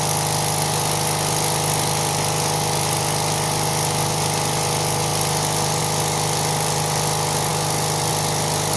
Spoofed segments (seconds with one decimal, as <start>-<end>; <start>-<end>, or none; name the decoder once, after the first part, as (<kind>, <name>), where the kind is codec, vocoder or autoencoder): none

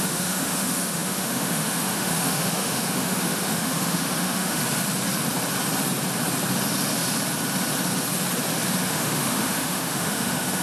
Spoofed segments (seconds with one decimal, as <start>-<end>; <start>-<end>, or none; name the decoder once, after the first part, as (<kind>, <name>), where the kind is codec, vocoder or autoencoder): 0.0-4.6 (autoencoder, DAC-VAE); 8.9-10.6

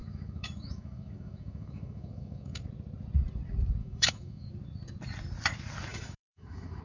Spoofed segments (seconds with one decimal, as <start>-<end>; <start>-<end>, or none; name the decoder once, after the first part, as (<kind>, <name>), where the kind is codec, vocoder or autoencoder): 0.0-2.6 (autoencoder, DAC-VAE); 3.8-4.5; 5.9-6.8

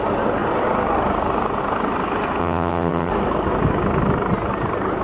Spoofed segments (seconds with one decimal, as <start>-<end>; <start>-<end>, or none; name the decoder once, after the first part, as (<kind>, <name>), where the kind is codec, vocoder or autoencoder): 2.4-3.1 (vocoder, HiFi-GAN)

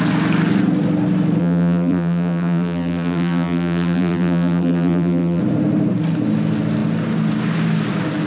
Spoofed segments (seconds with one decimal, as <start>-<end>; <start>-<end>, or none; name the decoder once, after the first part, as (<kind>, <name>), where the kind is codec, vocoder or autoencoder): 1.4-5.4 (vocoder, BigVGAN v2)